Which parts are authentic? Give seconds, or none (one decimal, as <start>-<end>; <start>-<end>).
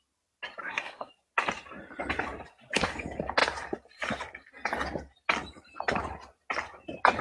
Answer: 0.0-0.6; 1.1-7.2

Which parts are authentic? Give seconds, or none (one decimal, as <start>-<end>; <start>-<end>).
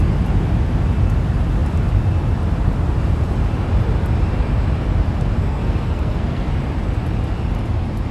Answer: 0.0-5.4; 6.5-8.1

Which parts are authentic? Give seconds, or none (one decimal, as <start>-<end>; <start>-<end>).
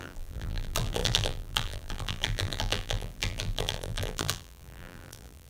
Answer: none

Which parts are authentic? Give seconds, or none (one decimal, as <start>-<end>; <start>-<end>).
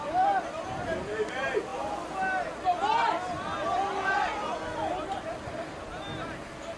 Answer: 0.0-6.8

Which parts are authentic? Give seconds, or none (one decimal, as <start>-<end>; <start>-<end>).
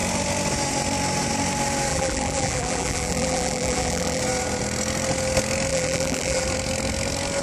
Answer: 0.0-1.9; 4.2-5.7; 6.4-7.4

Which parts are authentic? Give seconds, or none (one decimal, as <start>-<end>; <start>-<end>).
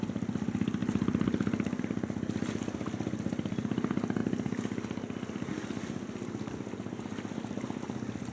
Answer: 0.0-8.3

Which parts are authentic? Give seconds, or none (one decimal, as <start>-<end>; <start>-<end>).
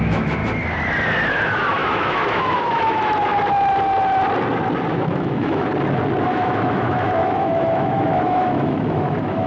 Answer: 0.4-1.3; 3.3-4.9; 5.7-6.2